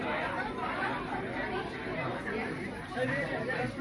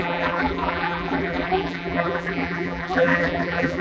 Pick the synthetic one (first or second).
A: second